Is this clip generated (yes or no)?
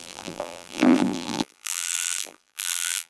yes